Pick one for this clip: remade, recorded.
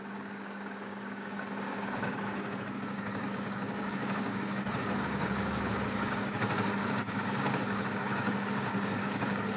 remade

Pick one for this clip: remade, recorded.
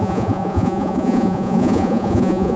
remade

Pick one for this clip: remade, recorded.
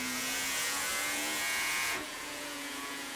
remade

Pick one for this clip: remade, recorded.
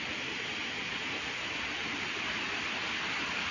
recorded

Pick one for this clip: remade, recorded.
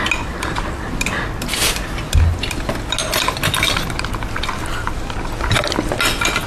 recorded